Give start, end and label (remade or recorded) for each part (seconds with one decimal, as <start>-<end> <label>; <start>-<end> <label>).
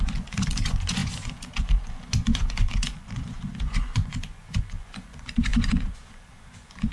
0.0-6.9 remade